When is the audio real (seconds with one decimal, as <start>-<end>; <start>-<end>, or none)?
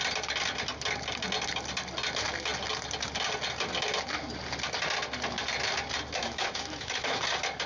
0.0-6.2; 7.2-7.7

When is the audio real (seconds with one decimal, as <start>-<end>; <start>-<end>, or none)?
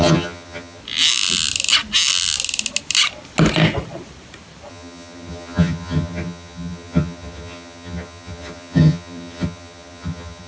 0.8-4.7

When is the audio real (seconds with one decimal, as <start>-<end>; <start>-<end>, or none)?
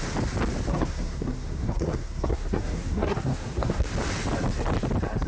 0.0-0.7; 3.9-5.3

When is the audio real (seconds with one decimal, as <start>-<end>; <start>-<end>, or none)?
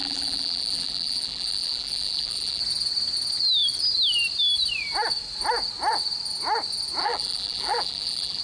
2.6-7.0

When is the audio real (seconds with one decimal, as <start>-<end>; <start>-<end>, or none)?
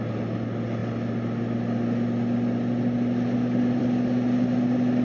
0.0-5.0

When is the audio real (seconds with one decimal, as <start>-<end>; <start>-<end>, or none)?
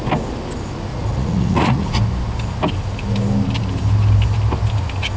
0.0-0.9; 2.0-5.2